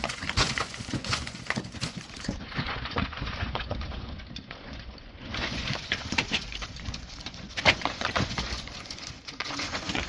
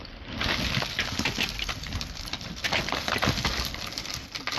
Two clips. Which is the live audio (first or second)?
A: second